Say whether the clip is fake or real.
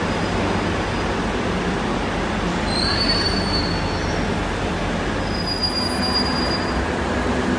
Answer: real